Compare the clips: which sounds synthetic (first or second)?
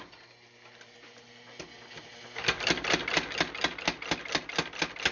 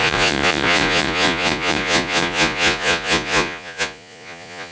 second